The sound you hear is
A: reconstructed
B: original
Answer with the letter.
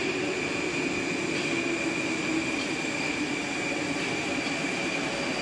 B